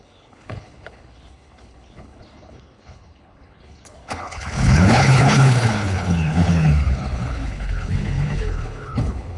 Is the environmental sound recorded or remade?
remade